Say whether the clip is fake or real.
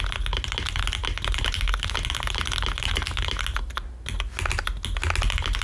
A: real